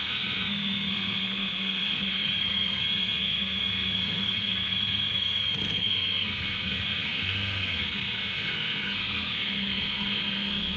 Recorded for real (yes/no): no